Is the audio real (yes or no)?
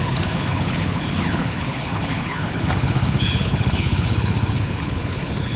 no